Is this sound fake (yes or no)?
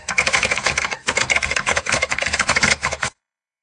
yes